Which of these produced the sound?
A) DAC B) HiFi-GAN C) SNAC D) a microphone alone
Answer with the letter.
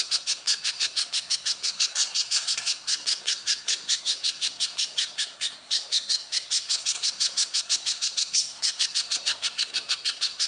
C